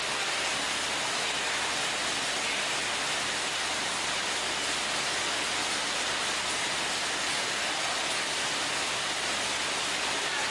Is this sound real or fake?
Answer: real